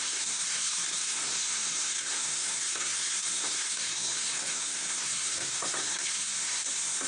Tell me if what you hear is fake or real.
fake